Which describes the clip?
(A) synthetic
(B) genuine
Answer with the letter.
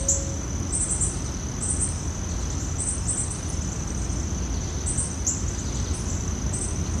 B